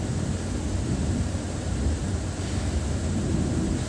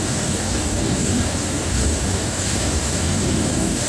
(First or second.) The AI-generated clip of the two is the second